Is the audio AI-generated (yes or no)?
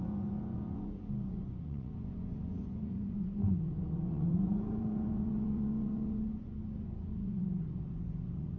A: yes